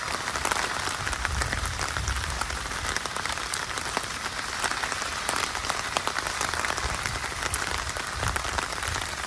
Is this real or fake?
fake